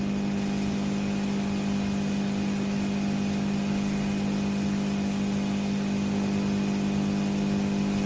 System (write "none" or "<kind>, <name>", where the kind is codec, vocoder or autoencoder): none